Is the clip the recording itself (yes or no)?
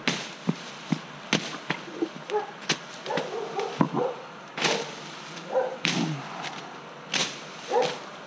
yes